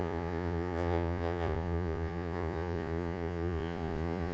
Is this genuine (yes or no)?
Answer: no